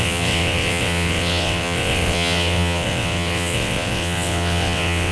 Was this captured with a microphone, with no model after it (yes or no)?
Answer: no